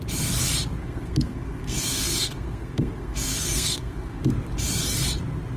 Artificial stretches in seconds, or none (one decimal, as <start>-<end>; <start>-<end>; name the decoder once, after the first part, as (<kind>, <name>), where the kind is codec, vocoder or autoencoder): 0.8-4.2 (codec, SNAC)